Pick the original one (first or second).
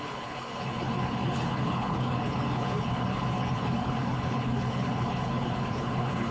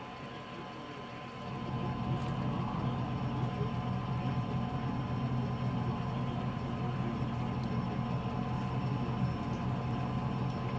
second